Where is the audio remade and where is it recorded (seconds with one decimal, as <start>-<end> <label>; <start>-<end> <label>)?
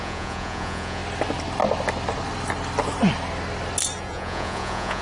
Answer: 0.0-1.0 remade; 1.0-4.0 recorded; 4.0-5.0 remade